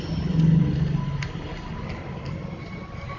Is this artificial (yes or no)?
no